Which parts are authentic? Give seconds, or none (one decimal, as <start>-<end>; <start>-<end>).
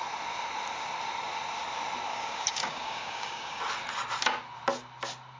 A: 0.0-2.1; 3.6-5.4